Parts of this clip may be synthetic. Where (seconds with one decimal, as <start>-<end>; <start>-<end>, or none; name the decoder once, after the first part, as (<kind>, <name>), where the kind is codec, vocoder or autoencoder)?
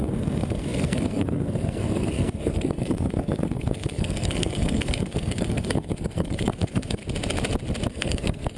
0.0-7.0 (codec, SNAC); 7.9-8.6